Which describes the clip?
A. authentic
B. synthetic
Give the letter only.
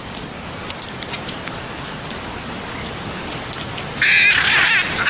A